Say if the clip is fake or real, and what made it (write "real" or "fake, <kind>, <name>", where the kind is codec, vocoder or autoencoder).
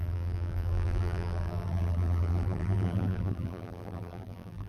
fake, vocoder, BigVGAN v2